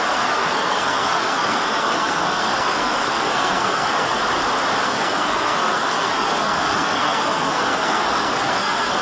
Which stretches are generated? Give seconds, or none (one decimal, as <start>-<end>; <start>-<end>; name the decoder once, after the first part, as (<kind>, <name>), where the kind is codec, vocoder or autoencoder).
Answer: 0.0-4.2 (codec, SNAC); 4.8-9.0